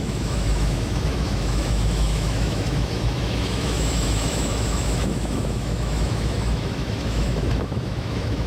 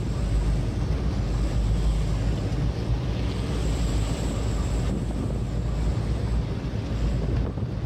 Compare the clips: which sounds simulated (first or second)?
first